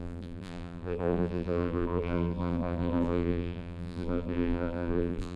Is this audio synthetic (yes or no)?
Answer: yes